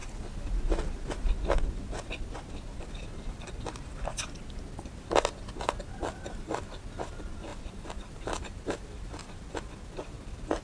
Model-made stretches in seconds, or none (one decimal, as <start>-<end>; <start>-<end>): 7.5-8.4